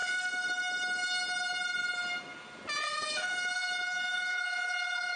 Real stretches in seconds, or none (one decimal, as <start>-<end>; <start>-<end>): 0.0-2.9